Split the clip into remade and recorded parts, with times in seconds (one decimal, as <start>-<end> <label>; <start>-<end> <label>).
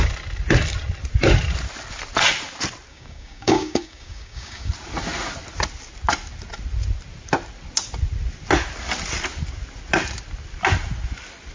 0.0-2.9 recorded; 2.9-4.7 remade; 4.7-11.5 recorded